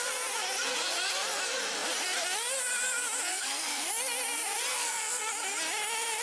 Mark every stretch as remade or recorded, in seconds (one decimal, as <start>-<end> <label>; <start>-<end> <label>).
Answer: 0.0-3.3 recorded; 3.3-3.9 remade; 3.9-4.7 recorded; 4.7-5.3 remade; 5.3-6.2 recorded